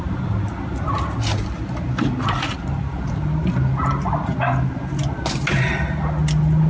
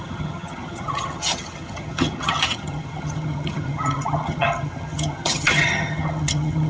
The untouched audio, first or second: first